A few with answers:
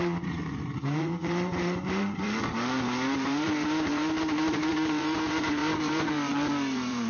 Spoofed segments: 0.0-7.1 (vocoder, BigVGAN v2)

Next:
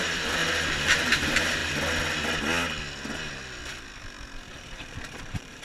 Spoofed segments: 0.0-0.4 (vocoder, BigVGAN v2); 0.9-1.6; 4.5-5.6

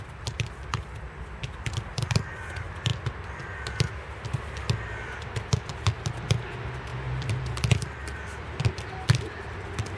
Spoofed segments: none

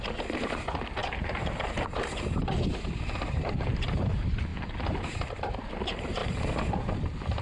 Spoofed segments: 0.0-4.5 (vocoder, BigVGAN v2); 5.0-6.2